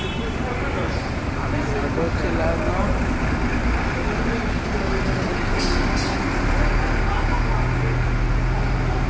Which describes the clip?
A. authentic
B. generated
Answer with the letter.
A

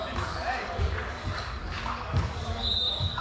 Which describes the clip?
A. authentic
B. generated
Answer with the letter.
B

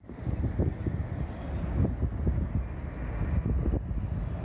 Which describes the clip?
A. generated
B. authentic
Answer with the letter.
B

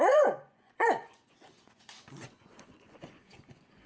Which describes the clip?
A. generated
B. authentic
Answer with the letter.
A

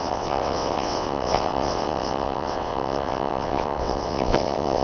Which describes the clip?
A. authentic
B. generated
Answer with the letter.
B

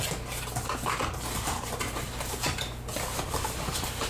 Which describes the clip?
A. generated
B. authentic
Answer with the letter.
B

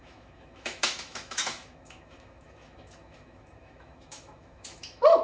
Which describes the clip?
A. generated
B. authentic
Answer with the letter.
A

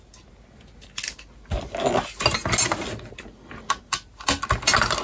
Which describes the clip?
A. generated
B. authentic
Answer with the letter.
B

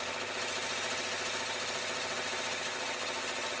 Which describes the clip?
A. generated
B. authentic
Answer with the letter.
B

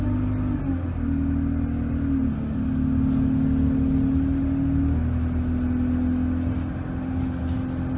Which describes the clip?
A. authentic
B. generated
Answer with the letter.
A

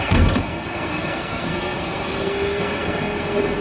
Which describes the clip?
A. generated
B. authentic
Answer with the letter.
A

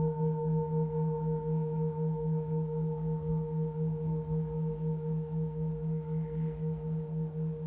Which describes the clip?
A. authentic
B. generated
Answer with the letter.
B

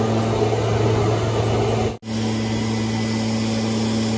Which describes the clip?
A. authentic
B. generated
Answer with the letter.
A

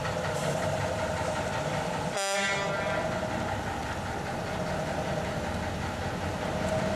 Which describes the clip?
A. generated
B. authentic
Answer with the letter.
B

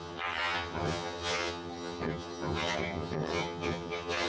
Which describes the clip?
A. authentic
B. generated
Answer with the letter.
B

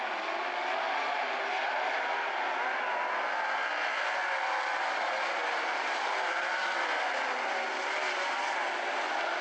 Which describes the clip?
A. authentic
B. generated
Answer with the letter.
A